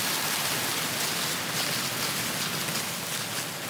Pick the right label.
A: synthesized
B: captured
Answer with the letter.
B